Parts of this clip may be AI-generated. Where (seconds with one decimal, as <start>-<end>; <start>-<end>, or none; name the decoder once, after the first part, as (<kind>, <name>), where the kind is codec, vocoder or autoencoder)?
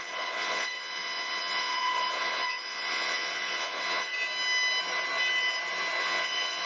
0.0-4.1 (vocoder, Vocos); 6.0-6.7